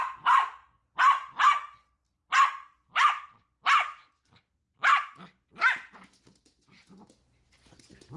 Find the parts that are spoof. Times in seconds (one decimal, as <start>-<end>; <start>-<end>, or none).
none